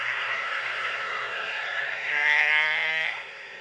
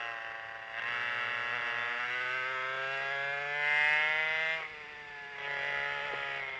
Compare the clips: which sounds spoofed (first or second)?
first